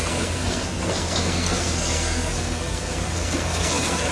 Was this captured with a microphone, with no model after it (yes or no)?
no